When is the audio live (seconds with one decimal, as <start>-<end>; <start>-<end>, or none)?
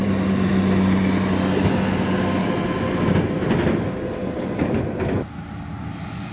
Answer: 0.5-4.2; 4.8-6.3